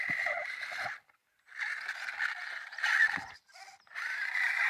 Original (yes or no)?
yes